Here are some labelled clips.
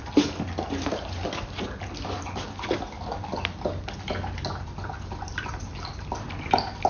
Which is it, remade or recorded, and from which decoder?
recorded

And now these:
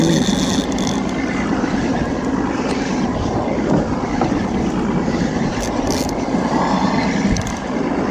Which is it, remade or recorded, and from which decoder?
recorded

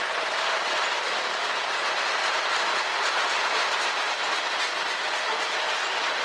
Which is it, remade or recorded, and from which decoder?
recorded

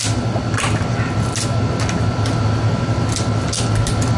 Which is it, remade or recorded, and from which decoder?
recorded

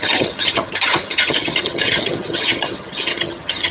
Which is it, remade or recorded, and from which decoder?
remade, vocoder, HiFi-GAN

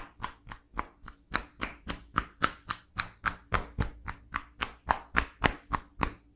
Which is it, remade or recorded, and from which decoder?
recorded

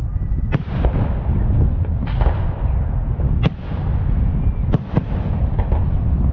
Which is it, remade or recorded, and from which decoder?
recorded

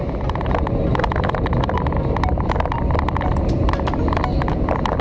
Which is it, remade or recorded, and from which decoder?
recorded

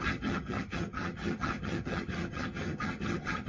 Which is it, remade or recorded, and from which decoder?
remade, vocoder, HiFi-GAN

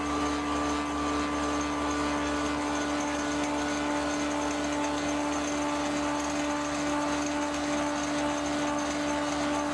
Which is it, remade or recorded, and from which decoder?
recorded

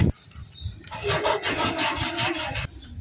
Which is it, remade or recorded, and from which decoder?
recorded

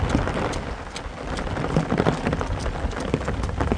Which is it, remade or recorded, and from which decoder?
recorded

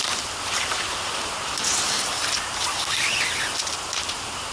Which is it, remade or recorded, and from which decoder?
recorded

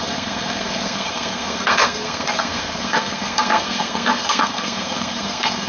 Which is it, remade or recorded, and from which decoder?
remade, codec, SNAC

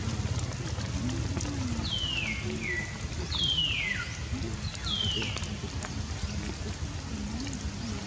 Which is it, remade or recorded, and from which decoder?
recorded